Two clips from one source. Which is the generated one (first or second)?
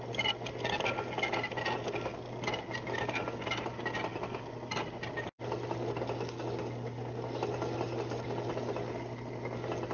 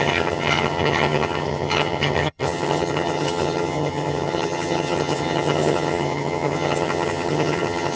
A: second